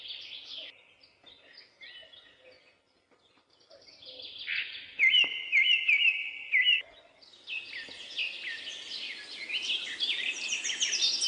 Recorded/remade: recorded